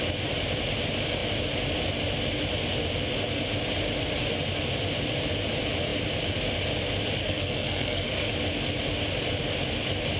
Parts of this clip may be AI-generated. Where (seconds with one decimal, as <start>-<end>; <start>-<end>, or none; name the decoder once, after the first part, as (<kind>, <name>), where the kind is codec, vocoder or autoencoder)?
7.2-8.3 (codec, SNAC)